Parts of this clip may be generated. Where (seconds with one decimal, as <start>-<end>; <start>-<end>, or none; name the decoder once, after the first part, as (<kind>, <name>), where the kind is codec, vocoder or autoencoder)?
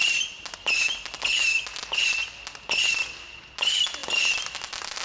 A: none